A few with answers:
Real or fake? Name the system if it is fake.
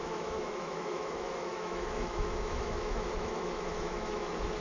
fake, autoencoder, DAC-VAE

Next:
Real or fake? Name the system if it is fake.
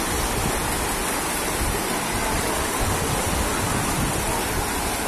real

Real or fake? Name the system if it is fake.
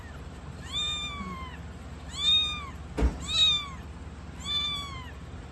real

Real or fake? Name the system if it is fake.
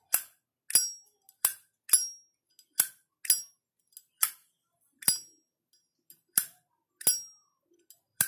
real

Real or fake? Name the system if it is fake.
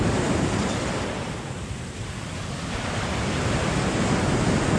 real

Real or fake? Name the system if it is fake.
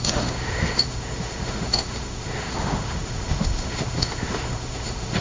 fake, autoencoder, DAC-VAE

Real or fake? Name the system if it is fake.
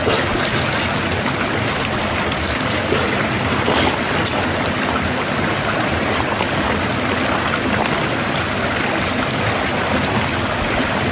real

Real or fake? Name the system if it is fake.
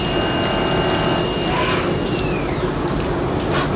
real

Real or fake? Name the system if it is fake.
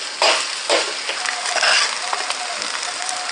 real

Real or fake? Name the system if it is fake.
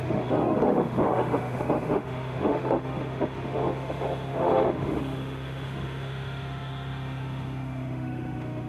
fake, autoencoder, DAC-VAE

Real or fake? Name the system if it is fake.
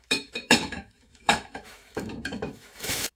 fake, autoencoder, DAC-VAE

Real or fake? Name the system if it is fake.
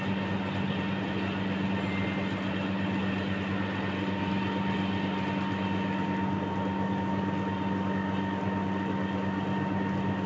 real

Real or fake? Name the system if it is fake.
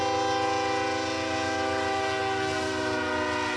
real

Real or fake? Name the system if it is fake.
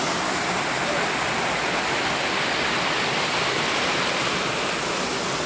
real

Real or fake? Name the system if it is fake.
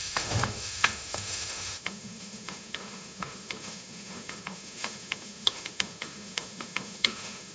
fake, autoencoder, DAC-VAE